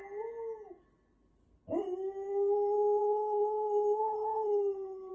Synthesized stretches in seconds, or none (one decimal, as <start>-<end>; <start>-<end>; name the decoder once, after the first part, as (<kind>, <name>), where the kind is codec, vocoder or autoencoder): 3.0-5.1 (codec, HILCodec)